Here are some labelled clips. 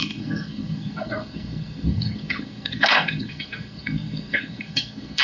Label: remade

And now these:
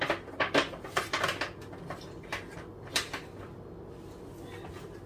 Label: recorded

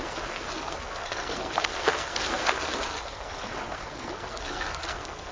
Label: remade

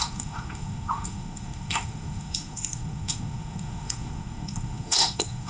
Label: remade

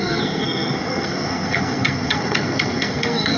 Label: remade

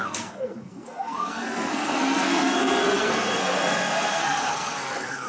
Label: remade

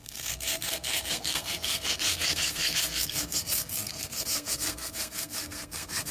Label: remade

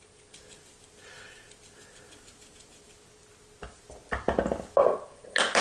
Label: recorded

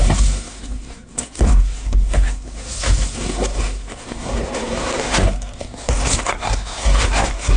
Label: remade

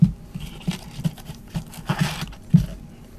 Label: recorded